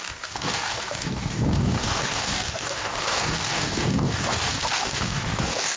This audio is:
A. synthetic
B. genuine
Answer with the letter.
A